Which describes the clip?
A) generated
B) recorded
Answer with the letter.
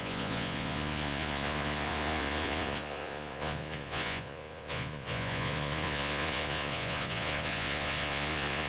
A